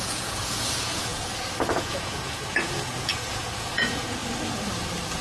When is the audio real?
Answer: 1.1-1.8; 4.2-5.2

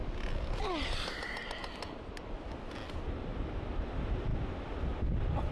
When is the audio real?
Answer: 0.0-5.5

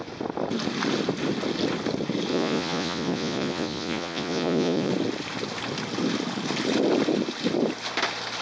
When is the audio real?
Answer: 0.0-2.3; 4.9-8.4

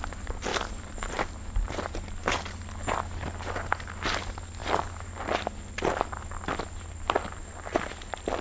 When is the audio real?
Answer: 0.0-8.4

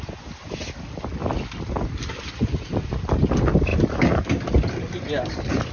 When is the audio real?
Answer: 0.0-5.7

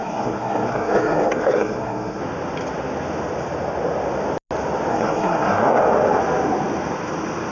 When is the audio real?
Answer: 2.2-4.9; 5.8-7.5